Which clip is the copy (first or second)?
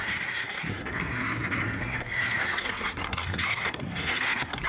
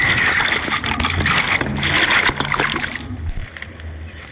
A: first